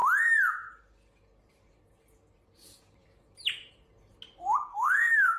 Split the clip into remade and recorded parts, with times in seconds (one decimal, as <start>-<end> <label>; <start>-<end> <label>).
0.0-4.7 recorded; 4.7-5.4 remade